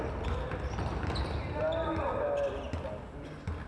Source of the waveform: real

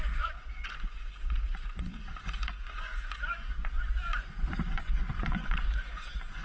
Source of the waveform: fake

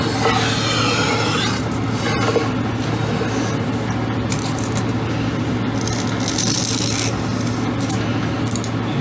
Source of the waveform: real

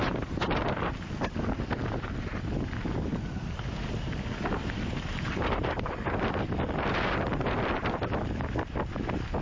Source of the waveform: real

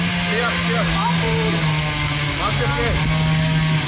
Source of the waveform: real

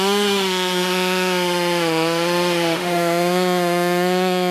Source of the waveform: fake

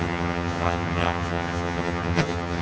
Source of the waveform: fake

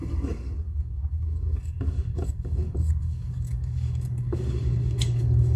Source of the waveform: fake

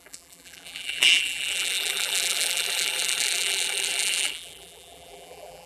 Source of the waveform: fake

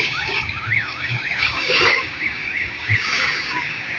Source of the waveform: fake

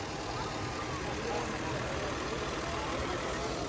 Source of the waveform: real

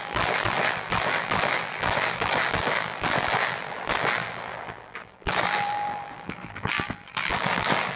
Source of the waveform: fake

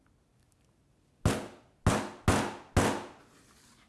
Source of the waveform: real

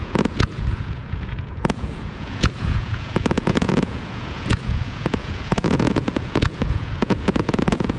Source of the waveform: fake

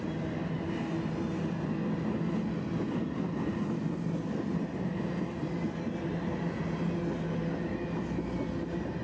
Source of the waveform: real